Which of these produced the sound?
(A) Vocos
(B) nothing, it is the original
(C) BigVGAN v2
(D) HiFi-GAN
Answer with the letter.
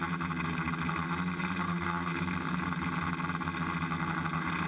B